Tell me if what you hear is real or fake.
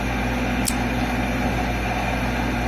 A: real